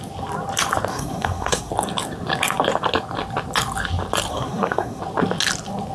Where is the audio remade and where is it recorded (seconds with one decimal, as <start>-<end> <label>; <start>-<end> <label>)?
0.0-0.9 recorded; 0.9-1.7 remade; 1.7-4.3 recorded; 4.3-5.0 remade; 5.0-5.9 recorded